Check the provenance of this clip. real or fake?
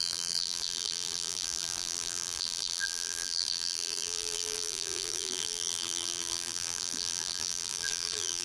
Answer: fake